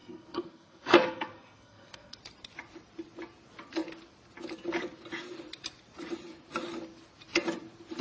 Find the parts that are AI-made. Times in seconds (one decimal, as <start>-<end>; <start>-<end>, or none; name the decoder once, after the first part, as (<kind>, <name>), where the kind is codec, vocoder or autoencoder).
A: 0.0-2.2 (codec, SNAC)